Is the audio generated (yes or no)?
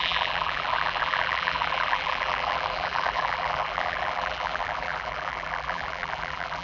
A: yes